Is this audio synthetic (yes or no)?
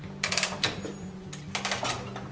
no